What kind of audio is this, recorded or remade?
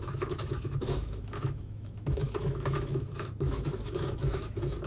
remade